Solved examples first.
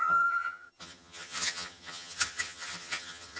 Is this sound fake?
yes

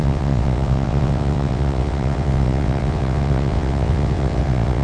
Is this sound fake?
yes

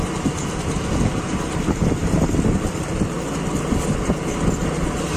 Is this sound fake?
no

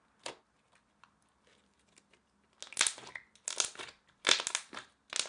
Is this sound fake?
no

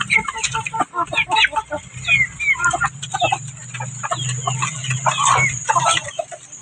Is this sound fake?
no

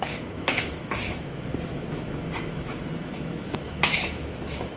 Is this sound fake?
yes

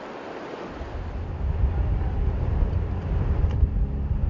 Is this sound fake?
no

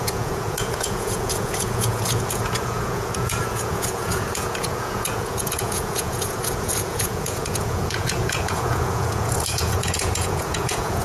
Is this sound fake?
yes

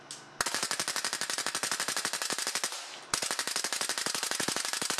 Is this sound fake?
no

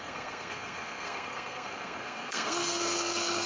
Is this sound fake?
yes